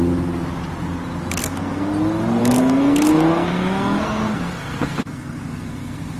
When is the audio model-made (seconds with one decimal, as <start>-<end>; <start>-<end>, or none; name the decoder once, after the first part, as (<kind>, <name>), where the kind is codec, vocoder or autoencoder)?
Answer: 1.4-1.9 (codec, SNAC); 2.4-6.2